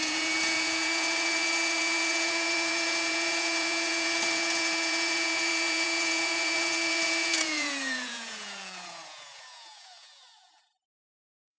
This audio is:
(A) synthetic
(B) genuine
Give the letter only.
A